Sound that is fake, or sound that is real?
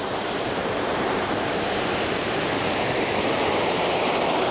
fake